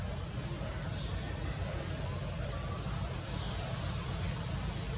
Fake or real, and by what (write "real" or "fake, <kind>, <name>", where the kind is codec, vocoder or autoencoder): real